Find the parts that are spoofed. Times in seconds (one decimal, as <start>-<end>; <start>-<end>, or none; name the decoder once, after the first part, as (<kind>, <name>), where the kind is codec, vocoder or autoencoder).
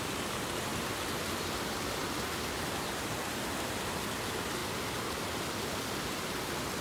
none